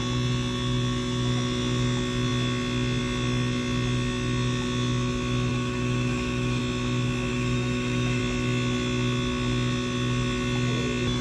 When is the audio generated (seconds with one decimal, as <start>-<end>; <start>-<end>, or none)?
5.5-6.6; 7.3-8.2